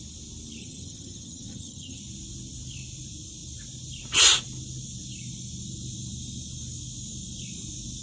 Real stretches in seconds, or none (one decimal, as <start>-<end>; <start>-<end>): 0.0-0.6; 2.0-8.0